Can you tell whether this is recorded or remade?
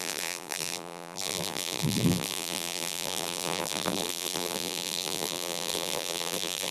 remade